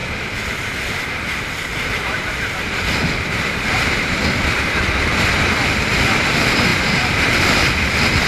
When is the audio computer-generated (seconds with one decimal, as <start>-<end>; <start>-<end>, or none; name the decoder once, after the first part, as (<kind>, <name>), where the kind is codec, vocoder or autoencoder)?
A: 0.0-8.3 (vocoder, BigVGAN v2)